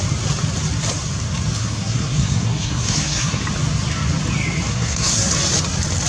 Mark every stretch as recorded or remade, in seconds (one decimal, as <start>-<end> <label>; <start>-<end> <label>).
0.0-1.6 recorded; 1.6-3.4 remade; 3.4-4.7 recorded; 4.7-5.3 remade; 5.3-6.1 recorded